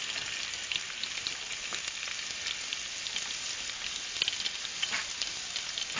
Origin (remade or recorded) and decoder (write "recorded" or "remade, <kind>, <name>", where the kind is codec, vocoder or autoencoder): recorded